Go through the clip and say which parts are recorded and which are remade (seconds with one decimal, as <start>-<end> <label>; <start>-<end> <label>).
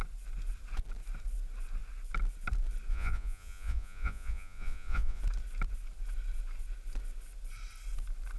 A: 0.0-2.9 recorded; 2.9-5.2 remade; 5.2-8.4 recorded